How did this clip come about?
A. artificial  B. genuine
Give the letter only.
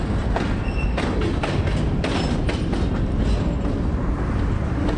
B